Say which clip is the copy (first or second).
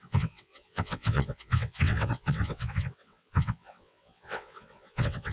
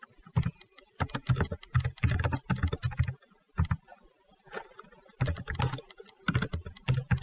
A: first